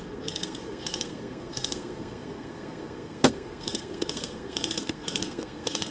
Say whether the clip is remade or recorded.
remade